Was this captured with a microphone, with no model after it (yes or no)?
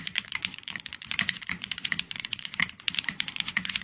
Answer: no